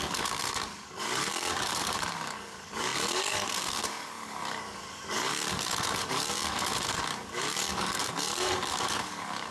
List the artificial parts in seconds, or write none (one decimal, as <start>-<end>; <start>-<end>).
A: 0.0-9.5